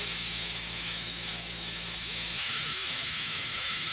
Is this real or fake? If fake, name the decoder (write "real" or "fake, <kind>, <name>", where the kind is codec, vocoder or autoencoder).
fake, autoencoder, DAC-VAE